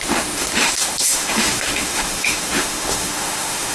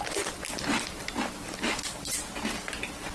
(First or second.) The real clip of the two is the second